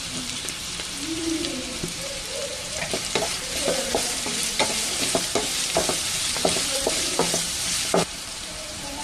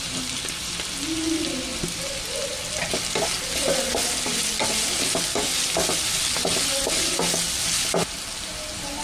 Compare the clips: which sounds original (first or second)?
second